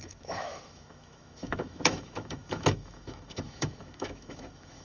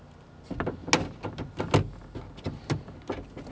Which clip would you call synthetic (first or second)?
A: first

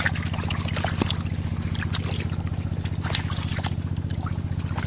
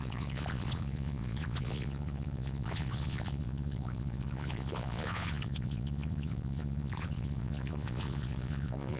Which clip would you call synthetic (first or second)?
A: second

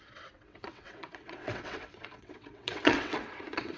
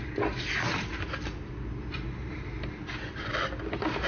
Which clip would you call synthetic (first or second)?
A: first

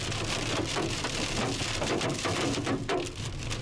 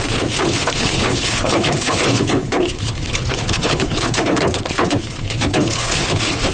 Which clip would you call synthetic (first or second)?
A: second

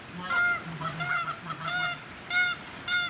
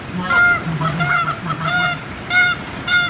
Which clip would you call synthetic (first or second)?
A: second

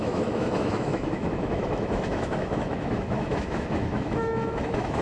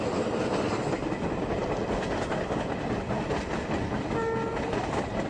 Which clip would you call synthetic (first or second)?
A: first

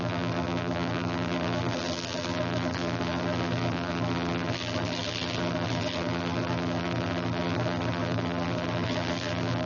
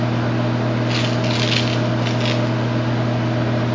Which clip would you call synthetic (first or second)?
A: first